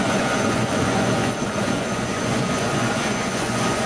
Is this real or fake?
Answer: fake